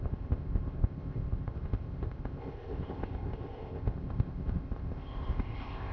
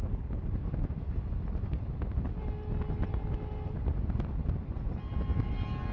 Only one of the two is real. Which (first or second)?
second